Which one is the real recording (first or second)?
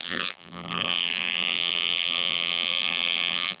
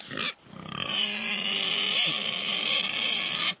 second